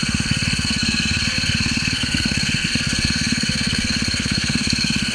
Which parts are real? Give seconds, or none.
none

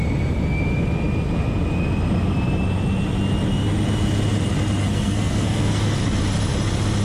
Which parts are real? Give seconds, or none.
0.0-4.8; 5.8-7.0

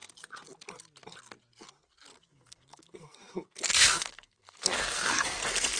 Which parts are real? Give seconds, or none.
0.0-2.1

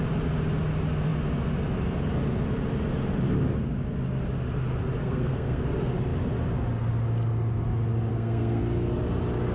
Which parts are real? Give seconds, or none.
0.0-5.0; 5.6-8.1; 8.6-9.5

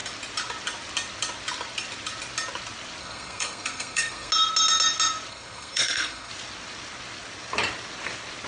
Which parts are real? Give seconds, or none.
0.0-3.0; 4.3-5.3; 6.3-8.5